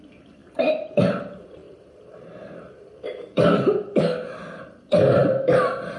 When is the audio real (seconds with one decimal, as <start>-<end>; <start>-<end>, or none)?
0.0-0.4; 4.0-5.2